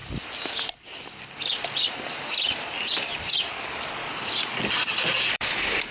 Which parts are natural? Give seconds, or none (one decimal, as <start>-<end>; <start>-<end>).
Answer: 0.0-3.5; 4.0-5.3